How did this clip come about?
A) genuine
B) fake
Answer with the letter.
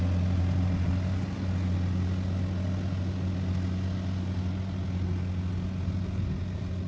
A